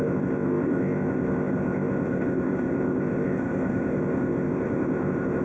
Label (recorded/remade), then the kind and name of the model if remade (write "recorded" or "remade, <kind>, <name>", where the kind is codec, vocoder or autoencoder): remade, codec, ZipCodec